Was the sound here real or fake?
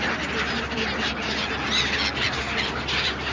real